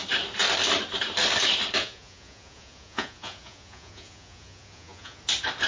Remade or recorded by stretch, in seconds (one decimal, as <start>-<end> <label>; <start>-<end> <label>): 0.0-1.8 recorded; 1.8-5.2 remade; 5.2-5.7 recorded